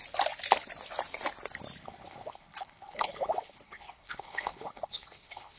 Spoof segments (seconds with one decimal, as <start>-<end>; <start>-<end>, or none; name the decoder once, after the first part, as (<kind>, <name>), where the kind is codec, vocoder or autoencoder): 1.8-5.6 (codec, HILCodec)